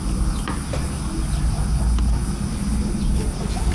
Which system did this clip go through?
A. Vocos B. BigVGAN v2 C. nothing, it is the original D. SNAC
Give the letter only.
C